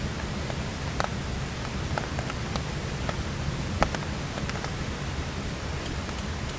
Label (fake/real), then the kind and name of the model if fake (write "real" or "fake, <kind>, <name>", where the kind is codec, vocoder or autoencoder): real